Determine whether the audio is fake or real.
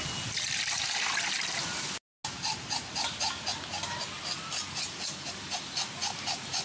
real